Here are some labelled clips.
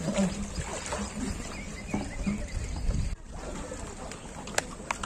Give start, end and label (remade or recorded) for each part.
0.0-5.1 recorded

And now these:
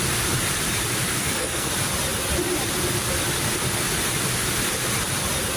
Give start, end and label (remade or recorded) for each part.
0.0-1.2 recorded; 1.2-1.7 remade; 1.7-5.6 recorded

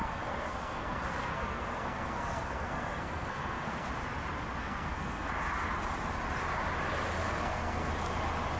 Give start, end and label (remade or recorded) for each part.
0.0-3.9 remade; 3.9-4.6 recorded; 4.6-5.3 remade; 5.3-7.2 recorded; 7.2-7.9 remade; 7.9-8.6 recorded

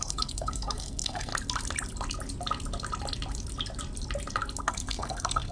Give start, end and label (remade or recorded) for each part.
0.0-1.3 remade; 1.3-4.6 recorded; 4.6-5.5 remade

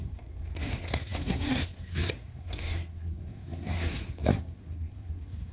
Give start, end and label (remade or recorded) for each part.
0.0-5.5 remade